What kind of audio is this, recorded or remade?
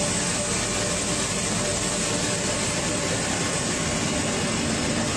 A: recorded